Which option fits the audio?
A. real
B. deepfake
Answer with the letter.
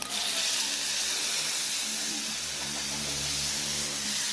A